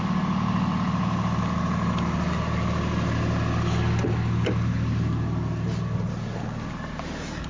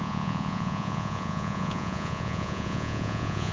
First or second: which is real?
first